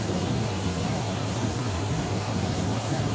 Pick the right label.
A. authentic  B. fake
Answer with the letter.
B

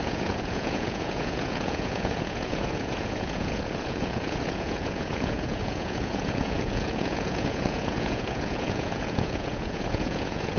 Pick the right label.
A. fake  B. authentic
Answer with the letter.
A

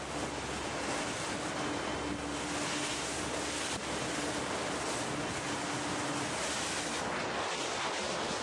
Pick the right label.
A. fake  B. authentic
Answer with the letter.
B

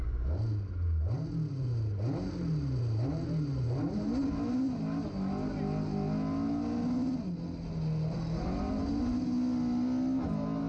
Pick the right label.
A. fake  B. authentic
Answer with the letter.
B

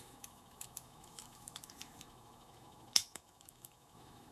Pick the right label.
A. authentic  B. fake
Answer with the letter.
B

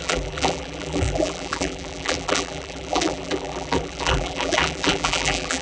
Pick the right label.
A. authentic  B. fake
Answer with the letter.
B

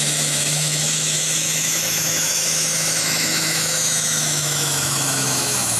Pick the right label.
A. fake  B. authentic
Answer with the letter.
A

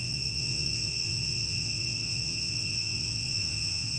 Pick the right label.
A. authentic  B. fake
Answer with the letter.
B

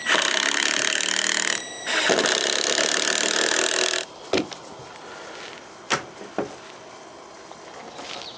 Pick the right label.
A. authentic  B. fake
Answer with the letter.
A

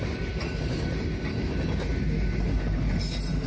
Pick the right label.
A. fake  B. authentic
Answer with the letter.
B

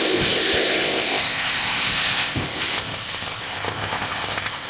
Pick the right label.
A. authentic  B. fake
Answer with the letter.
B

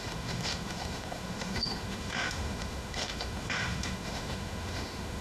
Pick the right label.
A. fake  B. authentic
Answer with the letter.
A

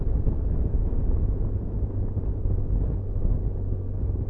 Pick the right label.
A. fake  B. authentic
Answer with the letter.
B